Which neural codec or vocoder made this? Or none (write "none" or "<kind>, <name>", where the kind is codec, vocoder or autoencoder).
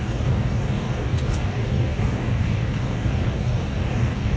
codec, DAC